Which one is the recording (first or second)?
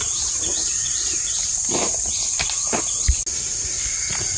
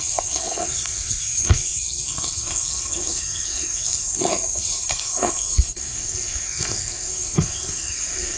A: first